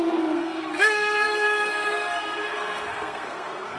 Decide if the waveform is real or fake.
fake